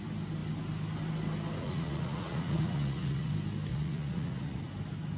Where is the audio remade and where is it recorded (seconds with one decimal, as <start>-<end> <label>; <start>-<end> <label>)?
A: 0.0-1.6 recorded; 1.6-3.3 remade; 3.3-3.7 recorded; 3.7-4.6 remade; 4.6-5.2 recorded